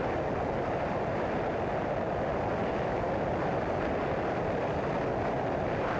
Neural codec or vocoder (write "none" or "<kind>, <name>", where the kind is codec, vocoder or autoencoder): none